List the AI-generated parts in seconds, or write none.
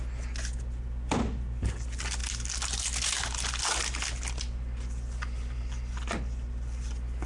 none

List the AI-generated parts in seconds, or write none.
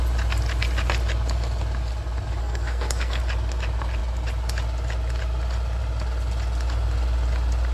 2.4-3.2 (codec, SNAC)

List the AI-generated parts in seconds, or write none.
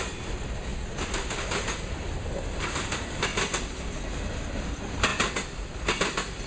none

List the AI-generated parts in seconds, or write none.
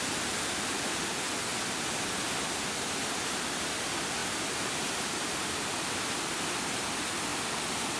4.2-6.6 (vocoder, BigVGAN v2); 7.3-8.0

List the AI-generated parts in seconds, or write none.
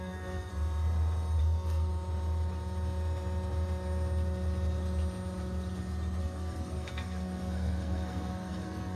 0.0-0.5 (codec, SNAC); 1.4-1.9; 6.2-9.0